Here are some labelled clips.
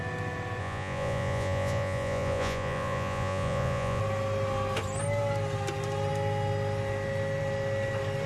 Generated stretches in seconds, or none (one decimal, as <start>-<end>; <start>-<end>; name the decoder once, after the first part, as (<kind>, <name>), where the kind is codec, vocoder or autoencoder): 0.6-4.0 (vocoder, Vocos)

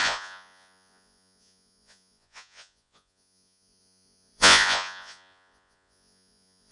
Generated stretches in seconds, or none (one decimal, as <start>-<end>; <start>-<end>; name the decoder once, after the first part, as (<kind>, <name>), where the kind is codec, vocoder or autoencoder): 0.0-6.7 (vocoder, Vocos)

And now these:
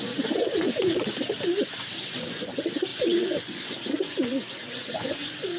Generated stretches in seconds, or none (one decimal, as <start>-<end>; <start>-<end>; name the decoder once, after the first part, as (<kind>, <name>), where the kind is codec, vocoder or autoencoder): 0.0-1.1 (vocoder, Vocos); 2.0-5.6